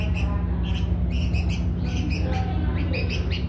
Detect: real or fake real